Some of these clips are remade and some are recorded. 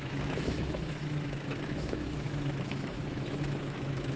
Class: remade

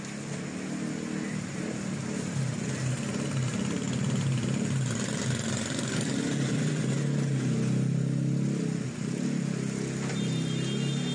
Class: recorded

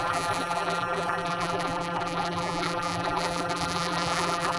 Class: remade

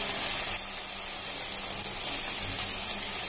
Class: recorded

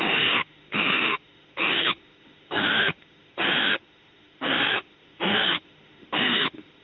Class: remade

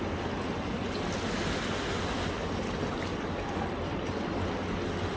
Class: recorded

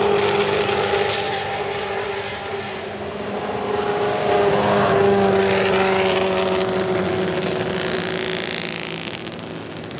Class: recorded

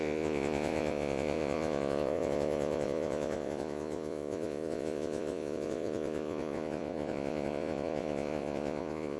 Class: remade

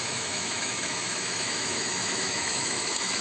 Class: remade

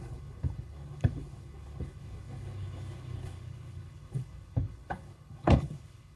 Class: remade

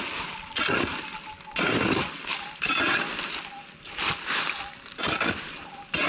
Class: recorded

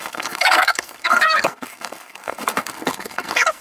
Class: remade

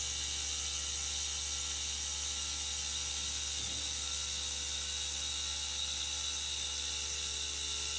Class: recorded